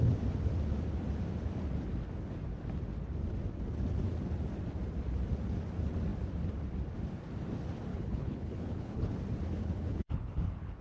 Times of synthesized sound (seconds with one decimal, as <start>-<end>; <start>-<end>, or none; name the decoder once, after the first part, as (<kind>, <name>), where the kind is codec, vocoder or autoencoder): 7.9-9.1 (codec, HILCodec); 9.6-10.8